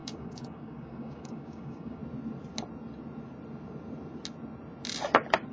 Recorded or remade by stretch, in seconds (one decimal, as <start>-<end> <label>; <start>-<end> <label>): 0.0-2.0 remade; 2.0-5.5 recorded